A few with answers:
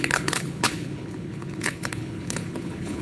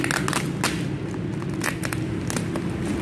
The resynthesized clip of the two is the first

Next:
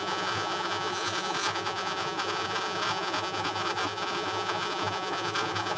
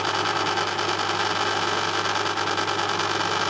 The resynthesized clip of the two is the first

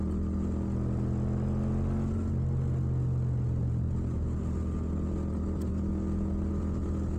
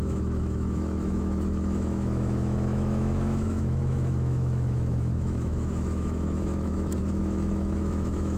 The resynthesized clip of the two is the second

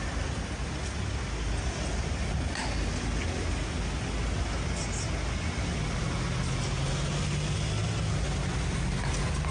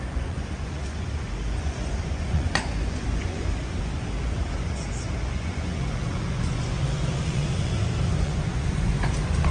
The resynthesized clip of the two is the second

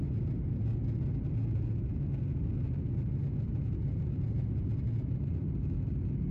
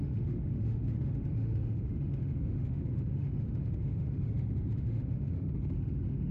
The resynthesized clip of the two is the second